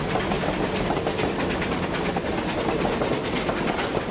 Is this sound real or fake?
real